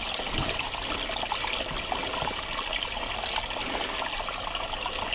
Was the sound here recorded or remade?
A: recorded